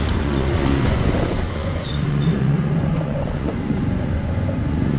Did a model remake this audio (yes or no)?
yes